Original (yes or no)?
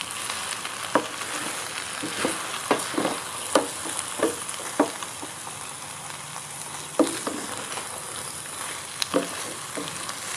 yes